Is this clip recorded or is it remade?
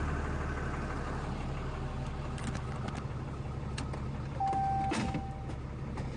recorded